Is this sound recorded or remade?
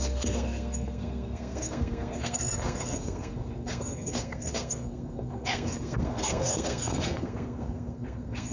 remade